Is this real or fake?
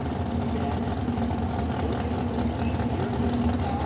real